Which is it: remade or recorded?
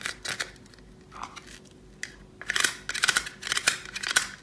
recorded